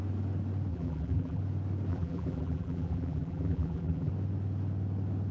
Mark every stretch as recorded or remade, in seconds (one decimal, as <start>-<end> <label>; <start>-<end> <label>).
0.0-0.7 recorded; 0.7-1.4 remade; 1.4-1.9 recorded; 1.9-4.1 remade; 4.1-5.3 recorded